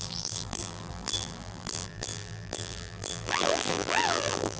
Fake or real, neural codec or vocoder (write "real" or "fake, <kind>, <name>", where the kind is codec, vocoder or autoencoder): fake, vocoder, BigVGAN v2